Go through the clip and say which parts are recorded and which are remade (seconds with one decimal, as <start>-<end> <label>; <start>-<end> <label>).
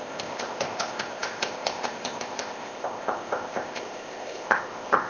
0.0-5.1 remade